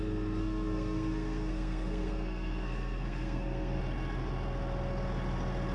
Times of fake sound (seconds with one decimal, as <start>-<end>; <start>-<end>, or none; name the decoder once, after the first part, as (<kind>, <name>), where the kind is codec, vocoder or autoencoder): 0.4-3.8 (codec, SNAC)

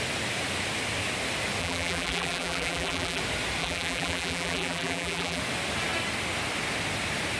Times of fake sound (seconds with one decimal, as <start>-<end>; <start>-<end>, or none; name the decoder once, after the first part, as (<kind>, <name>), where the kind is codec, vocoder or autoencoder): 1.6-3.2 (vocoder, BigVGAN v2); 3.6-5.4

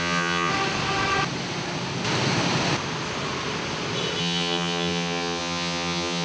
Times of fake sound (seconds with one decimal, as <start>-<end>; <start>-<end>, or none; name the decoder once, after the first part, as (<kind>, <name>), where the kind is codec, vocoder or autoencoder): 0.0-0.5 (vocoder, HiFi-GAN); 4.2-6.2

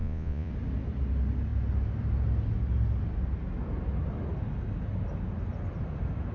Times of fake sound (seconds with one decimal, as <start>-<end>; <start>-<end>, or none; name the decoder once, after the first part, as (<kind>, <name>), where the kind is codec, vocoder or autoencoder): 0.0-0.5 (vocoder, Vocos)